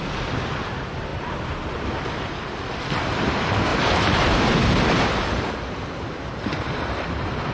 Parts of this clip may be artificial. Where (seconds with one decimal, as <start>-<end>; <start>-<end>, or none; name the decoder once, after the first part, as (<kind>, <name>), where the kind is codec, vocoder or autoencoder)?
1.1-1.9 (vocoder, BigVGAN v2); 3.7-5.5